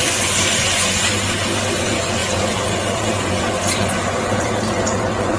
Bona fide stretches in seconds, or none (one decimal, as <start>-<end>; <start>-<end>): 1.1-1.8

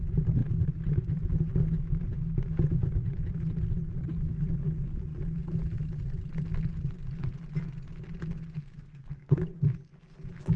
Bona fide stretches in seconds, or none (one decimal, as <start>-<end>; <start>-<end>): 0.0-8.6; 9.4-10.6

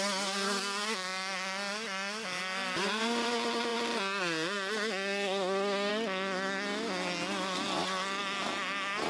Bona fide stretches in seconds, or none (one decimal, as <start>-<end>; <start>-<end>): 0.0-9.1

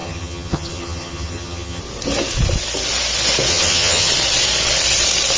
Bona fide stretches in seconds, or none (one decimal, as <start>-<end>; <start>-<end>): 1.8-3.5; 4.1-5.4

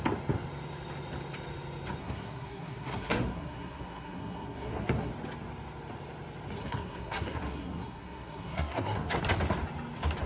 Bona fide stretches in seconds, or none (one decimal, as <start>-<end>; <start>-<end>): 0.0-2.0; 5.1-6.6; 9.2-10.3

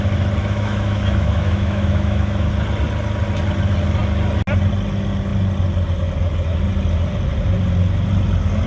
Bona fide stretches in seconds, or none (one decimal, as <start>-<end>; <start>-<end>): 0.0-0.4; 2.5-8.7

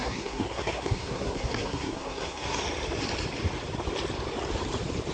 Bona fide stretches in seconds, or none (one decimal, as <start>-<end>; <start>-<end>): 2.6-5.1

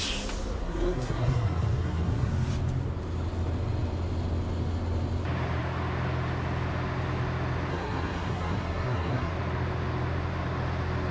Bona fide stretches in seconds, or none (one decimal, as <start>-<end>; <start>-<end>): 0.0-0.6; 2.3-7.7; 9.3-11.1